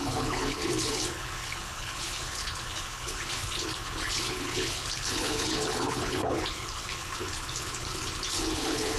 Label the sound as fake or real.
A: fake